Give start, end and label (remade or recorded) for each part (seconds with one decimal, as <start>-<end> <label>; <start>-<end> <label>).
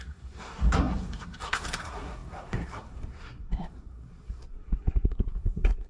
0.0-5.9 remade